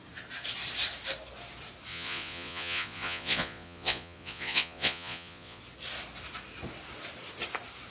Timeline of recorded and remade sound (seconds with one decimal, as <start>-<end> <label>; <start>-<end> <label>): 0.0-1.9 recorded; 1.9-5.6 remade; 5.6-7.9 recorded